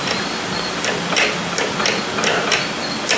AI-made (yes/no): no